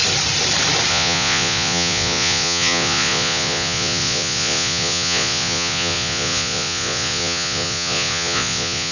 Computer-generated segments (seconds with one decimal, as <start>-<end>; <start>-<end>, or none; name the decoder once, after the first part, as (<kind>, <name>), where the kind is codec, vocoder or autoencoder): 0.9-8.9 (vocoder, Vocos)